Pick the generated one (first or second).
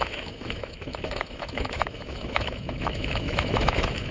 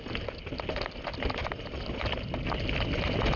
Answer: first